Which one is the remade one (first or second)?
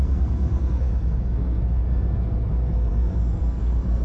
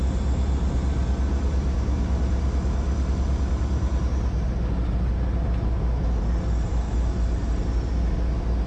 first